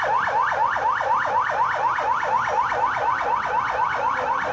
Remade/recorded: recorded